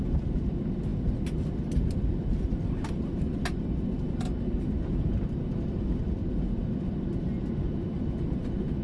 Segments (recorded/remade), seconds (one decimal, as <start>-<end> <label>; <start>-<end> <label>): 0.0-8.8 recorded